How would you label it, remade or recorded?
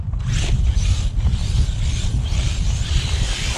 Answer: recorded